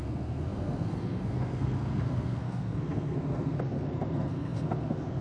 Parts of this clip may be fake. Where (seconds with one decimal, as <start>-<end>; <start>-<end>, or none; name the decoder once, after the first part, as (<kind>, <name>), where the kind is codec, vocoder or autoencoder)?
0.0-5.2 (codec, SNAC)